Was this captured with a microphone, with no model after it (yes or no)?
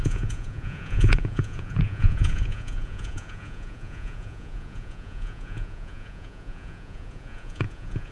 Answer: no